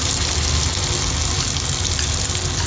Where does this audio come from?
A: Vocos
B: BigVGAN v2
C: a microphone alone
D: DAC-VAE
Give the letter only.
C